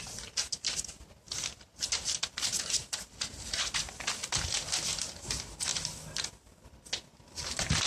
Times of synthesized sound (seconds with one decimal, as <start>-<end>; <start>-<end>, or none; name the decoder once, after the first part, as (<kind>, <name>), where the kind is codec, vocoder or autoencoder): none